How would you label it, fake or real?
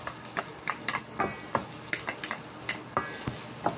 real